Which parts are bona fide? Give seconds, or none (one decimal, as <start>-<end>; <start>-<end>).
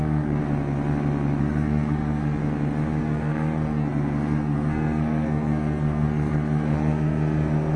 0.4-1.4; 2.4-3.0